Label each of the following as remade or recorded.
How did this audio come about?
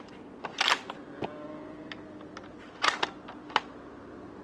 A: recorded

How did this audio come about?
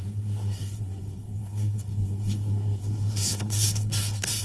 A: remade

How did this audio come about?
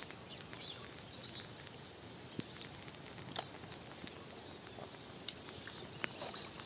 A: recorded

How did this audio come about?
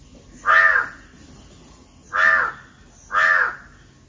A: recorded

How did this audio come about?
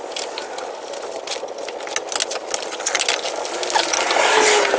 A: recorded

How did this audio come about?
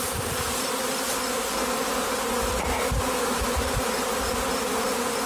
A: recorded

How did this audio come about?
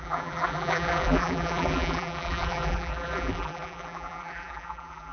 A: remade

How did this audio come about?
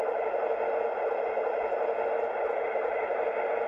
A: recorded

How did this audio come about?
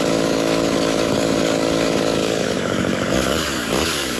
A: remade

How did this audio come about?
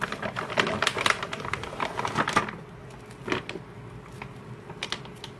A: recorded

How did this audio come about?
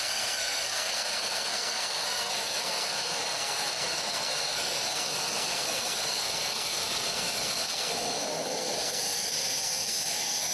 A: remade